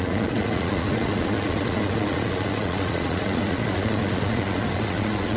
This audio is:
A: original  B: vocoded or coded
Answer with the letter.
B